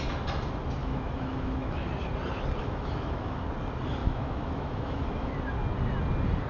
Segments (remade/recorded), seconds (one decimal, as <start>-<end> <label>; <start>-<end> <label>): 0.0-0.8 recorded; 0.8-1.9 remade; 1.9-2.6 recorded; 2.6-3.4 remade; 3.4-4.0 recorded; 4.0-5.3 remade; 5.3-6.5 recorded